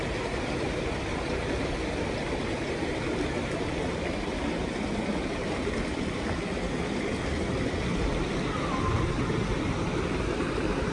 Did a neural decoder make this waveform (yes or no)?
no